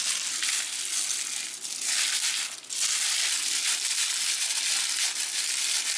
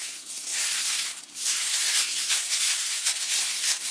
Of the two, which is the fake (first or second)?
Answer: second